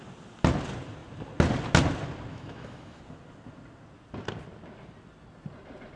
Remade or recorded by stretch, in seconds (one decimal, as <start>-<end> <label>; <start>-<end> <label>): 0.0-2.3 recorded; 2.3-3.0 remade; 3.0-6.0 recorded